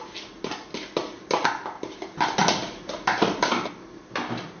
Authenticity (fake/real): real